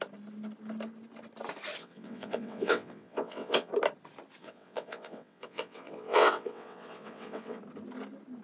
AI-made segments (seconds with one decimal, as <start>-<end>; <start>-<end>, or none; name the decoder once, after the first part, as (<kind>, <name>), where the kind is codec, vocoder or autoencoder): 1.8-3.7 (vocoder, WaveNeXt); 4.4-7.6

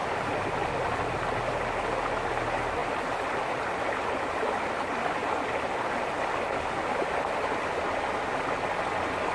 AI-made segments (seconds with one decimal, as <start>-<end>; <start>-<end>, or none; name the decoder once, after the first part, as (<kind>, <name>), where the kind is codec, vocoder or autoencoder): none